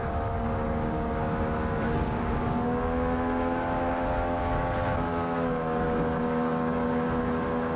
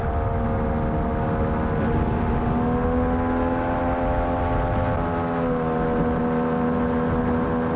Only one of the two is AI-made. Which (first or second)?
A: first